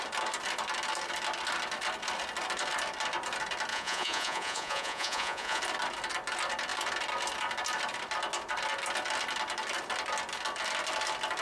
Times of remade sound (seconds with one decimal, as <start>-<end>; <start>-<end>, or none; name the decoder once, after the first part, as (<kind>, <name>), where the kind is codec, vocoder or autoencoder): 3.7-5.6 (vocoder, Vocos)